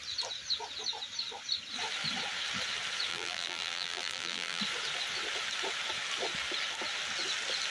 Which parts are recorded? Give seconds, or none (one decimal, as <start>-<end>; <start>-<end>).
0.0-3.1; 4.6-7.7